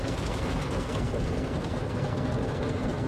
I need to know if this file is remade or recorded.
remade